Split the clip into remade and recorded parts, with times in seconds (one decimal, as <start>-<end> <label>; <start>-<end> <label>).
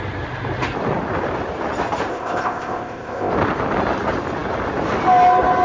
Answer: 0.0-2.1 recorded; 2.1-3.3 remade; 3.3-5.6 recorded